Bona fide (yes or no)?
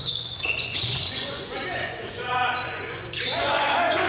no